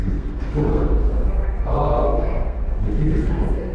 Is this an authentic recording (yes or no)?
no